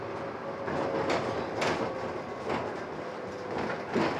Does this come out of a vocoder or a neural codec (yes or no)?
no